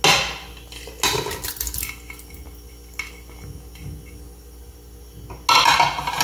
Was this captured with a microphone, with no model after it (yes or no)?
yes